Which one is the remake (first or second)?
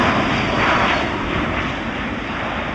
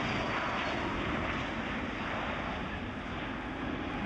first